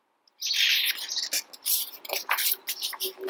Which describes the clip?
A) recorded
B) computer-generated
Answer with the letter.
A